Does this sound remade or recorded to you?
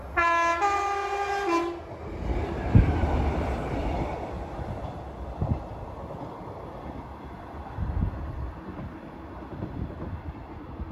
recorded